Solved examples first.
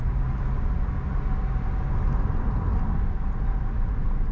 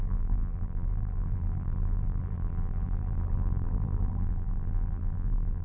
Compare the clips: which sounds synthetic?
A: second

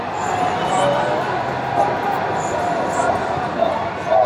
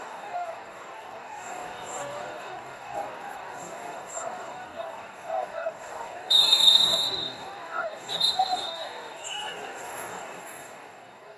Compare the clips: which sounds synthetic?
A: second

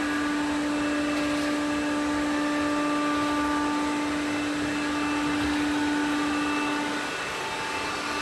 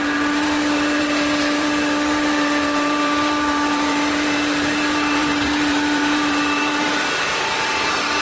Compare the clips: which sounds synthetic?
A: second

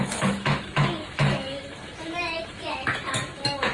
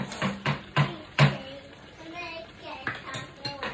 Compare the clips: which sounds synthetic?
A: first